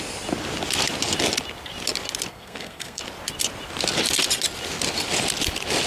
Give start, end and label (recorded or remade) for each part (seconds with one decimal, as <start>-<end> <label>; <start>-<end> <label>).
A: 0.0-2.3 recorded; 2.3-3.0 remade; 3.0-5.9 recorded